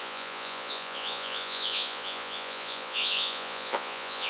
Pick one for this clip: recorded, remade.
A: remade